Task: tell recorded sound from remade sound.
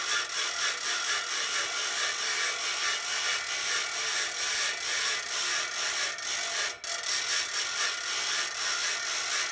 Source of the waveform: recorded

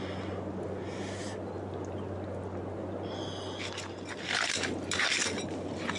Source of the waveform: recorded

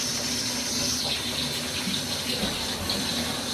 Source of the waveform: recorded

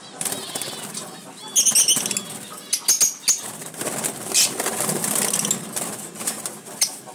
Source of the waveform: recorded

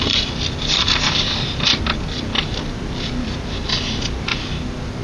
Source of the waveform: recorded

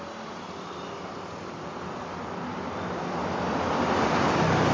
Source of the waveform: recorded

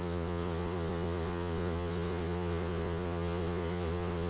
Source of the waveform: remade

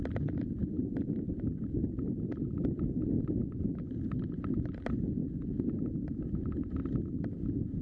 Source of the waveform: recorded